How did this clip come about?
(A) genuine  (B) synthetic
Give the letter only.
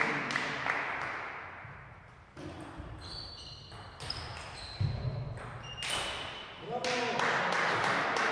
A